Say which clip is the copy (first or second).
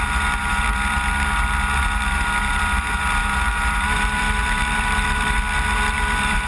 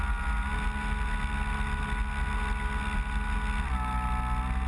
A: first